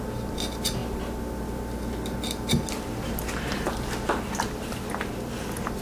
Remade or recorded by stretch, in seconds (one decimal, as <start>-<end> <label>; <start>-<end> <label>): 0.0-5.8 recorded